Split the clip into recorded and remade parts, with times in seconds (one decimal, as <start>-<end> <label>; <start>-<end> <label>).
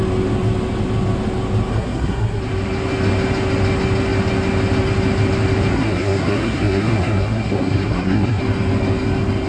0.0-1.7 recorded; 1.7-2.4 remade; 2.4-5.7 recorded; 5.7-8.4 remade; 8.4-9.5 recorded